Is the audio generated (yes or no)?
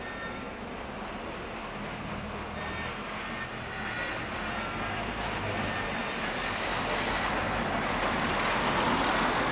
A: no